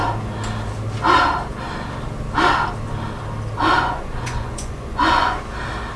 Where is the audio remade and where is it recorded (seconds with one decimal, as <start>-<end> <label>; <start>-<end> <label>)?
0.0-3.7 recorded; 3.7-5.4 remade; 5.4-6.0 recorded